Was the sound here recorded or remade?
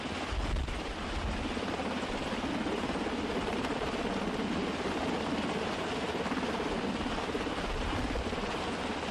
recorded